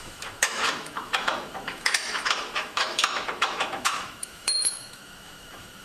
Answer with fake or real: fake